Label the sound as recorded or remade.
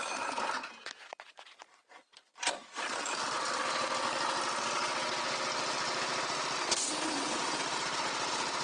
recorded